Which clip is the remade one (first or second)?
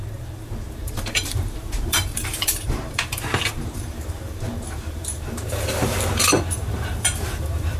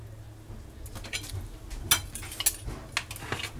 first